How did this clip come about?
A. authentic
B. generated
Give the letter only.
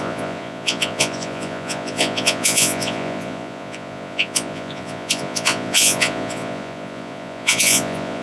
B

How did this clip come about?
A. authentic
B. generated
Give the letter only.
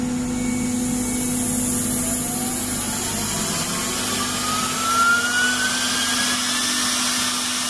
A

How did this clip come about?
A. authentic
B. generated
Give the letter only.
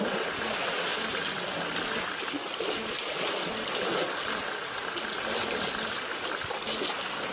A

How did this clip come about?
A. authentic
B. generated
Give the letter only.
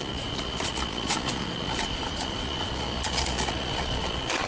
B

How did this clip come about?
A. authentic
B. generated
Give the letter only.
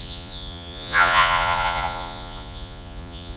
B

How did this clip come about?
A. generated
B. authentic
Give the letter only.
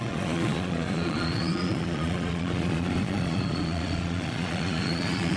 A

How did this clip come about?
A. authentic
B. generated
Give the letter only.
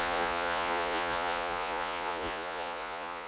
B